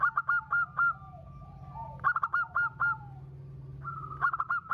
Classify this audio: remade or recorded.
recorded